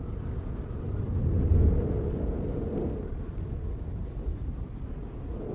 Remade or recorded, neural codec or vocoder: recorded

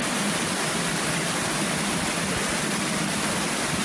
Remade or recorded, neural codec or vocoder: recorded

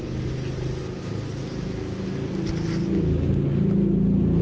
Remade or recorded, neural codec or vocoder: recorded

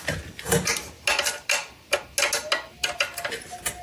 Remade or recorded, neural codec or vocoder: recorded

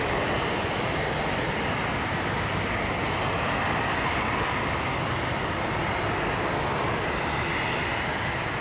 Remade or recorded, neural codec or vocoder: recorded